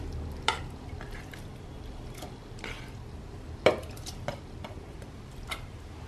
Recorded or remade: recorded